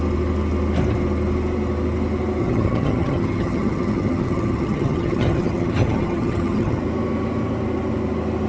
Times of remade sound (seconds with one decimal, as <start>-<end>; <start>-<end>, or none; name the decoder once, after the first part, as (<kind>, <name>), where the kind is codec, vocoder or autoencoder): 2.4-6.8 (vocoder, HiFi-GAN)